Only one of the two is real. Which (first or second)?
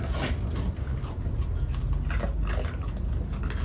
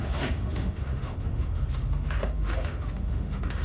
first